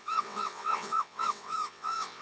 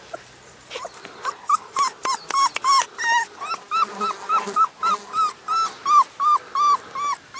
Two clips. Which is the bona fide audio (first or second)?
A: second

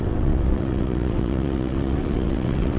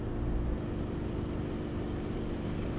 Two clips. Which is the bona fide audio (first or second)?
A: second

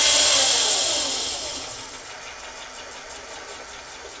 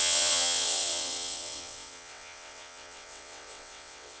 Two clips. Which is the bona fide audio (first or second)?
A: first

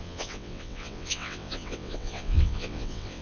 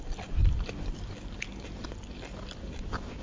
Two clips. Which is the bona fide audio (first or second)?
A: second